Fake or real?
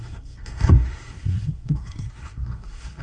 fake